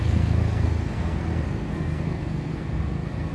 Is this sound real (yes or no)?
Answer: no